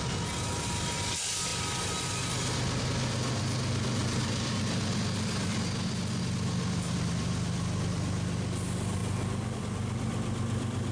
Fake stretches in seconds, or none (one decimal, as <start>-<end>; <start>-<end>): 4.0-4.6